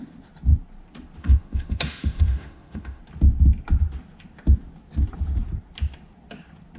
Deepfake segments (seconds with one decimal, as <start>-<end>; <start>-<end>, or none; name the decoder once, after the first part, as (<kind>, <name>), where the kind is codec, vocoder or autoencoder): 1.2-3.0 (autoencoder, DAC-VAE)